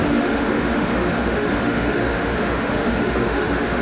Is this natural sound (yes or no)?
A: no